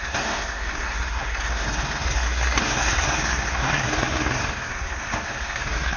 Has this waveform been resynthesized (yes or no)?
yes